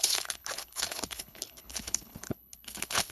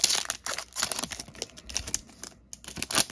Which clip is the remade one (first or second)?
first